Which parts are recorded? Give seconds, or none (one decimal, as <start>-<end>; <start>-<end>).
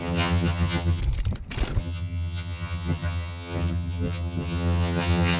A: 1.0-1.8